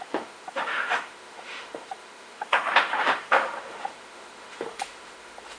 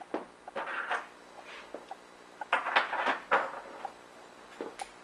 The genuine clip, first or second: second